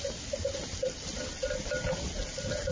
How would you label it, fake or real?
real